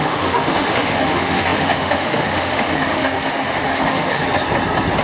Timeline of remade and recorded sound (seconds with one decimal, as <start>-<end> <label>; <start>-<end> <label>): 0.0-4.2 remade; 4.2-5.0 recorded